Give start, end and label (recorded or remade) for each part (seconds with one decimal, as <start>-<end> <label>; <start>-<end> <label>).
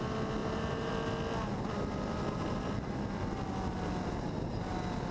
0.0-0.4 recorded; 0.4-0.9 remade; 0.9-5.1 recorded